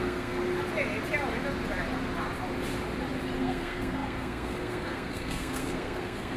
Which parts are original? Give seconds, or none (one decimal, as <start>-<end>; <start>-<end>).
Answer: 0.4-3.4